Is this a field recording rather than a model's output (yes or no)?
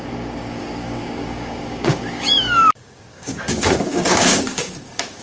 no